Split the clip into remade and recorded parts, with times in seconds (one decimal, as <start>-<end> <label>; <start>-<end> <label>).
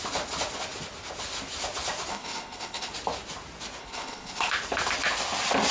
0.0-2.1 recorded; 2.1-2.9 remade; 2.9-3.8 recorded; 3.8-4.5 remade; 4.5-5.7 recorded